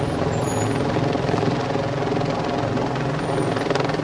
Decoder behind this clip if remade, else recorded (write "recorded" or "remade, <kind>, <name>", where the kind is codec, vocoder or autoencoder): recorded